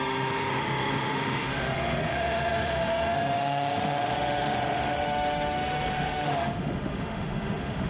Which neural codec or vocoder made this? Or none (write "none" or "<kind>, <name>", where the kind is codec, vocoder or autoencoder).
autoencoder, DAC-VAE